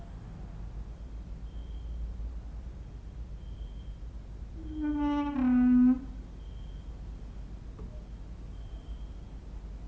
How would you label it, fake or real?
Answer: real